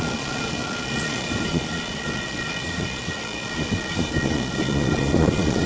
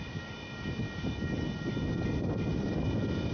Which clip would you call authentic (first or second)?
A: second